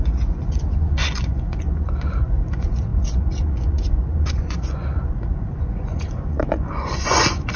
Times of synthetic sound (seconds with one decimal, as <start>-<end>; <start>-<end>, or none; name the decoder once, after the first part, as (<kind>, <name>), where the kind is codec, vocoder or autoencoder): 0.0-7.6 (vocoder, Vocos)

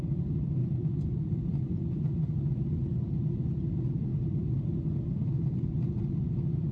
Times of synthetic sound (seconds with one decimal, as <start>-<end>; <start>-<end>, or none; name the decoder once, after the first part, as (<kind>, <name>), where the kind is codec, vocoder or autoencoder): 0.6-2.5 (vocoder, BigVGAN v2); 4.1-6.7

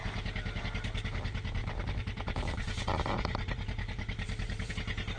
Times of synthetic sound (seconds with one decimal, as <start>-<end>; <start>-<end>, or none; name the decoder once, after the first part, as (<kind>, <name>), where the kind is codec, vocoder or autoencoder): 1.6-4.7 (vocoder, BigVGAN v2)

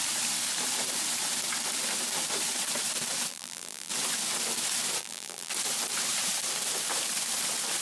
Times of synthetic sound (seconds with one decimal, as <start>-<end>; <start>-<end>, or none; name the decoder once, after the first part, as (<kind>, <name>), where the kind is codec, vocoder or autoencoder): 3.3-3.9 (vocoder, BigVGAN v2); 5.0-5.5

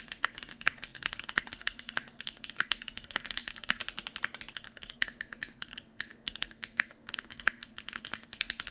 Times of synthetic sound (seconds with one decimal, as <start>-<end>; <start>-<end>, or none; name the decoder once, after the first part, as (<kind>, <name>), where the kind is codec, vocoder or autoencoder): 0.0-3.8 (codec, SNAC); 4.5-8.7

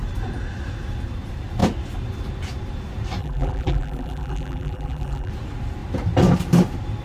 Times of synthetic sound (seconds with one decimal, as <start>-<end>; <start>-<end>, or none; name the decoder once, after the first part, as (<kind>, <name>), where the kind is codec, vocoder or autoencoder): 3.2-5.3 (vocoder, BigVGAN v2)

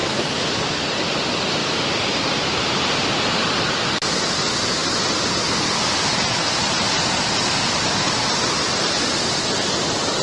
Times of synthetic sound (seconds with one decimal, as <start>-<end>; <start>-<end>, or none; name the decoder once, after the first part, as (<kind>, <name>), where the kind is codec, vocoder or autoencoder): 0.0-0.5 (autoencoder, DAC-VAE)

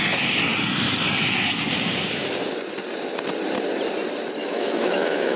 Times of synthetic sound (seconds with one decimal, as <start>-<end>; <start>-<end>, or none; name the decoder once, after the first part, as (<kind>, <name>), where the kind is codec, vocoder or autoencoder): 4.4-5.4 (autoencoder, DAC-VAE)